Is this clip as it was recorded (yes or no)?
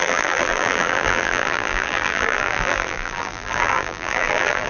no